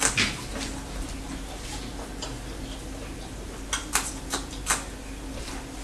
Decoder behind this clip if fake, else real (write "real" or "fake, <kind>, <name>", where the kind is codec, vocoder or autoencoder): real